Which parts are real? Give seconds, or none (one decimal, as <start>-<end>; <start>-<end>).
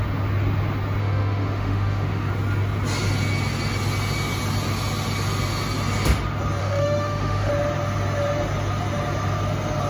0.0-1.0; 2.3-6.6; 7.5-9.9